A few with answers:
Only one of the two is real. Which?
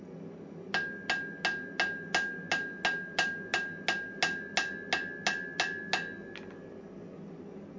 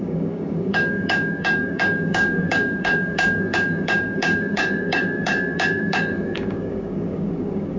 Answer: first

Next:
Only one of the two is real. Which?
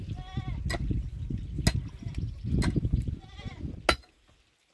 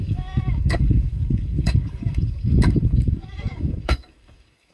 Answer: first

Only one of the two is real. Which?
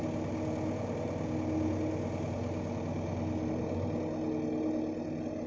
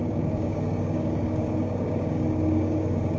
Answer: first